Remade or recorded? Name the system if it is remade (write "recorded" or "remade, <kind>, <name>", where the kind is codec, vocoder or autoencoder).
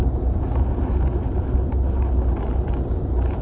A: recorded